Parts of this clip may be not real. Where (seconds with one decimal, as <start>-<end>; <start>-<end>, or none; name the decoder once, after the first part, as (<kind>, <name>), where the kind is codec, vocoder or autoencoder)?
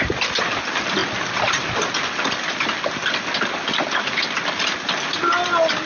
none